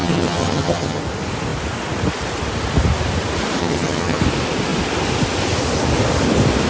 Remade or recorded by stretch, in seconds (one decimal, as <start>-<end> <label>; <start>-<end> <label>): 0.0-1.0 remade; 1.0-3.6 recorded; 3.6-4.2 remade; 4.2-6.7 recorded